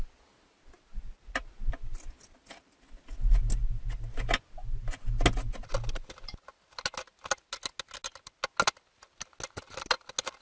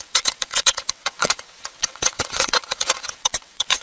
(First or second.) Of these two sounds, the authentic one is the first